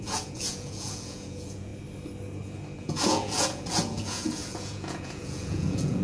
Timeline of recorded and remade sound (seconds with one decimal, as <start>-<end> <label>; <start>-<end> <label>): 0.0-1.7 remade; 1.7-2.8 recorded; 2.8-6.0 remade